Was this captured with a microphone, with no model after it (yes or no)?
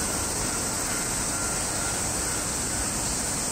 yes